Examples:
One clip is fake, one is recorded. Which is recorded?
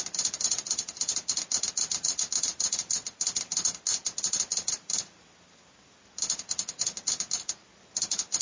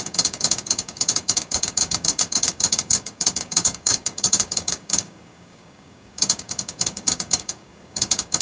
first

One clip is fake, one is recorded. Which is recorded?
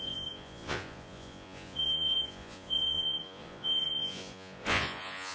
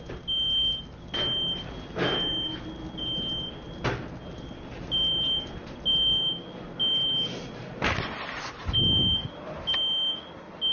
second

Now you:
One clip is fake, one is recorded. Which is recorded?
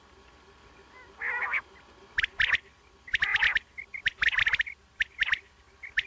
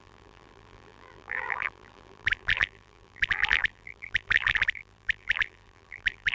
first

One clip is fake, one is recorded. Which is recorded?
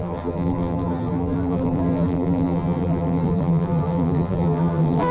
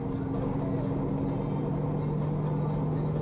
second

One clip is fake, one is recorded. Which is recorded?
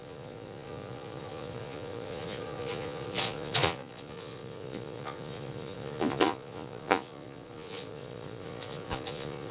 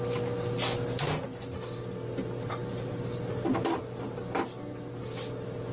second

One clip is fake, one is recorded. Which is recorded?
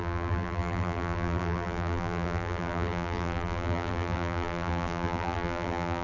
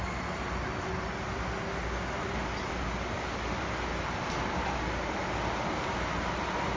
second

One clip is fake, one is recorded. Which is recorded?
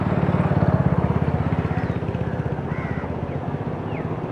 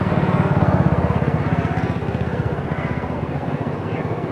first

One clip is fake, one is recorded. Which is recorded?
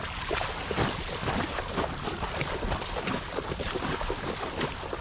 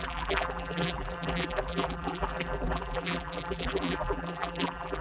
first